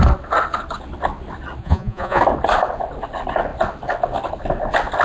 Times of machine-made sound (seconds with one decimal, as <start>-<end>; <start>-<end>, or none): 1.6-2.2